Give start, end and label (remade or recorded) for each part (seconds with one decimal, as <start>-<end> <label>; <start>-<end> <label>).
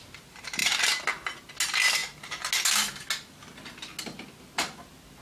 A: 0.0-5.2 recorded